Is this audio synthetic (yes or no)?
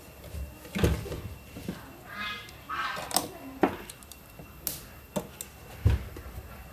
no